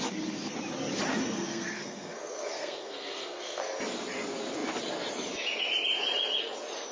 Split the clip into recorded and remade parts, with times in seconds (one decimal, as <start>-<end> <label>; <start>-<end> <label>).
0.0-1.2 recorded; 1.2-3.6 remade; 3.6-6.9 recorded